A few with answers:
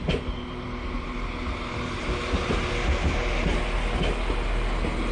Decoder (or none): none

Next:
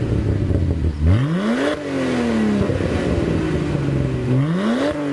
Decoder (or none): none